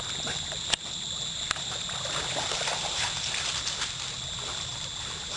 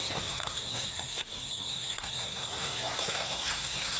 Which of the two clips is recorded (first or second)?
first